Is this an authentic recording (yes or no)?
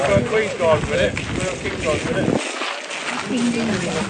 yes